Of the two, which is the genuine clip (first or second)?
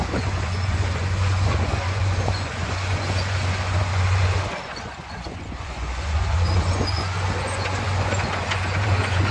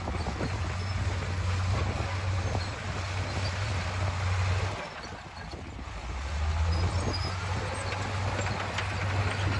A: second